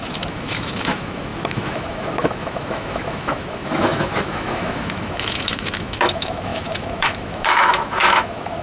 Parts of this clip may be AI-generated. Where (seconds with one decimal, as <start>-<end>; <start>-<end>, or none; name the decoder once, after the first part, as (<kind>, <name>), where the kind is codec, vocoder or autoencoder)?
0.0-8.6 (autoencoder, DAC-VAE)